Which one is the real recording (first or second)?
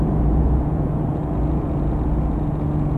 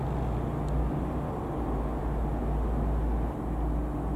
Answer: second